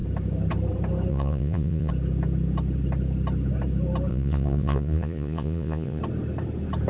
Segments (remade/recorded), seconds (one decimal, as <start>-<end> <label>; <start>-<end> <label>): 0.0-1.1 recorded; 1.1-1.9 remade; 1.9-4.1 recorded; 4.1-6.0 remade; 6.0-6.9 recorded